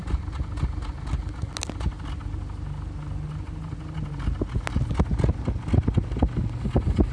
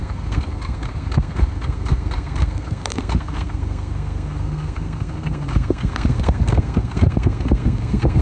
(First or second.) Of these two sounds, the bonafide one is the first